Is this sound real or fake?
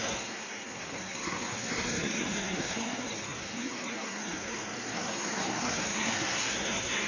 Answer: fake